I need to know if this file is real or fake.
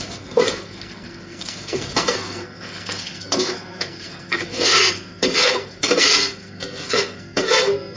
fake